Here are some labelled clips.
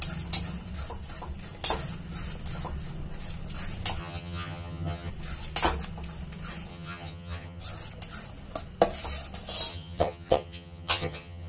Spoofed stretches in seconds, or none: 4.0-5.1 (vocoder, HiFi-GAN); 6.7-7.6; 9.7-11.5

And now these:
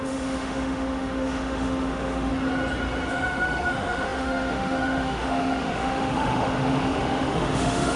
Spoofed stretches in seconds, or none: 0.0-2.3 (autoencoder, DAC-VAE); 3.1-8.0

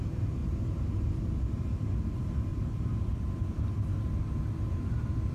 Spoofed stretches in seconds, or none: 0.4-1.2 (vocoder, BigVGAN v2); 2.5-4.1

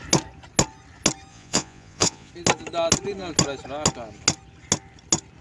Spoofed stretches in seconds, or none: 1.3-2.3 (vocoder, Vocos)